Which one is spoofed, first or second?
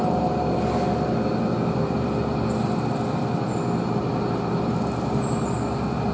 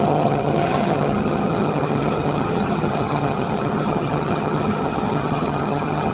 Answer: second